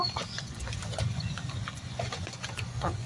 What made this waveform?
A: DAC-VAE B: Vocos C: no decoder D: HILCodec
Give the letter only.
B